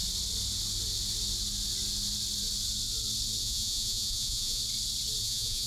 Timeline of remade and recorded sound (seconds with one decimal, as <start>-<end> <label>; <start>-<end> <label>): 0.0-3.4 recorded; 3.4-4.6 remade; 4.6-5.2 recorded; 5.2-5.7 remade